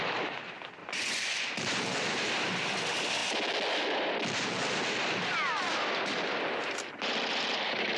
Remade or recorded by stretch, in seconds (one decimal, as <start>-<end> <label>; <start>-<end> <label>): 0.0-0.8 recorded; 0.8-1.5 remade; 1.5-8.0 recorded